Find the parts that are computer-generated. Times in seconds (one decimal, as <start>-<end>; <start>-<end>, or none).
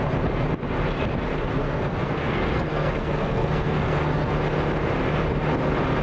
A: 1.6-4.3